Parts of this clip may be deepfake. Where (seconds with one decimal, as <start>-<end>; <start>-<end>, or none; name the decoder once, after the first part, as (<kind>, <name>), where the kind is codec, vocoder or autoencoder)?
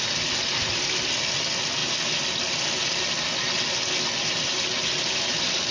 none